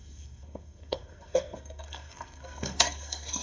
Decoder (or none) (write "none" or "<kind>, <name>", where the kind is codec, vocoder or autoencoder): codec, SNAC